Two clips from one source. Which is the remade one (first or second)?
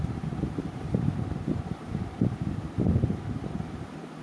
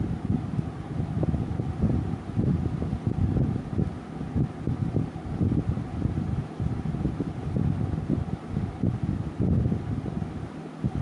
first